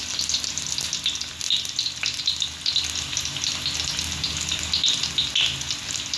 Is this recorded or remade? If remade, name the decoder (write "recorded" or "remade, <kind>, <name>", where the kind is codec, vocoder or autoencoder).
recorded